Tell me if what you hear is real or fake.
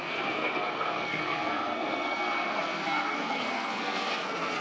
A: fake